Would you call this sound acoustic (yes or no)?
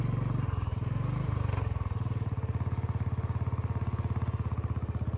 yes